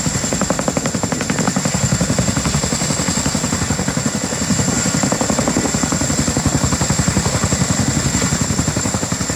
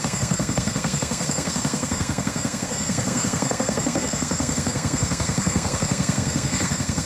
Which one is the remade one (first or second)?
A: second